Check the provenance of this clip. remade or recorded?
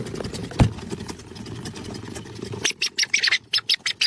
recorded